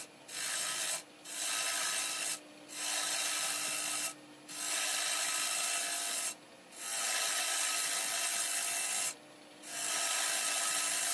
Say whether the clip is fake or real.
real